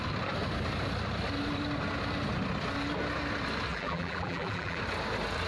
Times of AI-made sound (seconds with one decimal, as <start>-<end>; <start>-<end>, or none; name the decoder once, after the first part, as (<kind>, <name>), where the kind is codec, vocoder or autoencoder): 3.7-4.8 (vocoder, BigVGAN v2)